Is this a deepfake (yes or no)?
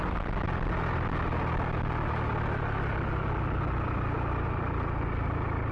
no